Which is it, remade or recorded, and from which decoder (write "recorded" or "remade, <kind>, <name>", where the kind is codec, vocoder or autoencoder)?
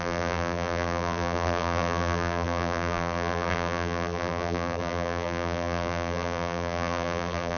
remade, vocoder, BigVGAN v2